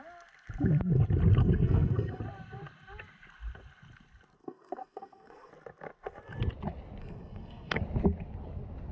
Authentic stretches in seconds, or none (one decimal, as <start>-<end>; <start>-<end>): 0.0-1.4; 2.2-4.4; 5.5-7.0; 7.8-8.9